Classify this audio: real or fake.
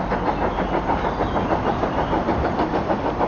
real